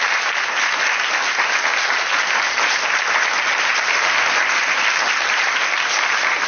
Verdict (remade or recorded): recorded